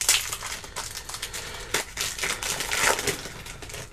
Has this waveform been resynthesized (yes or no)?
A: no